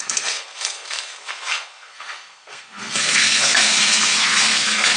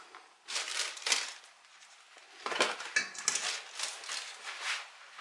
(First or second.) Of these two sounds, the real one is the second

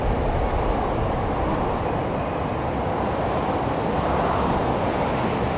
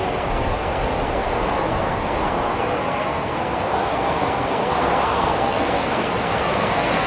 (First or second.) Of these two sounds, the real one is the first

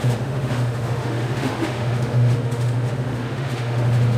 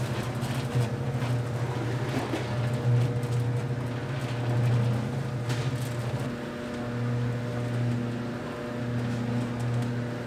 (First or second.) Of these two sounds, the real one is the second